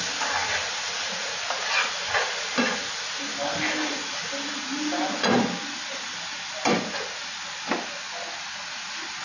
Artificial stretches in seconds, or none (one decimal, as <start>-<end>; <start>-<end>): none